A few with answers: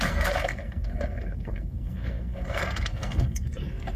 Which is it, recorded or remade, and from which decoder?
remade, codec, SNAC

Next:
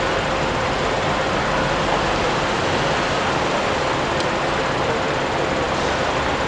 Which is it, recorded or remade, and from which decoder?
recorded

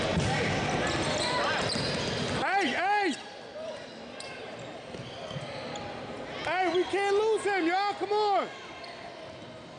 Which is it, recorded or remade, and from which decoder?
recorded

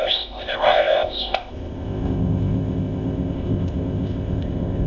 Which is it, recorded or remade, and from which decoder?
remade, codec, ZipCodec